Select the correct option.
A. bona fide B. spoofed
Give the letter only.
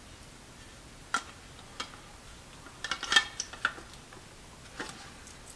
A